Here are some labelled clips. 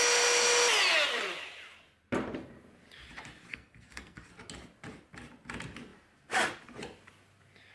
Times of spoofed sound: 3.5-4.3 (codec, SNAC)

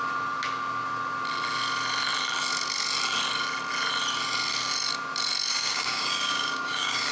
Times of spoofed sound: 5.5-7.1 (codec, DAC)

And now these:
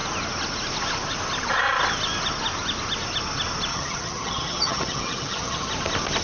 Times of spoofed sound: 3.7-5.7 (vocoder, HiFi-GAN)

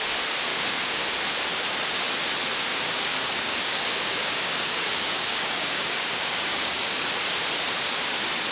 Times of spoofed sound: 0.5-1.2 (codec, DAC); 2.7-7.1

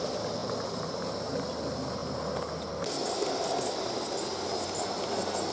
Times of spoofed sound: none

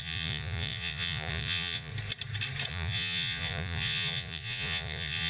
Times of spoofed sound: 0.0-1.9 (vocoder, Vocos); 2.7-5.3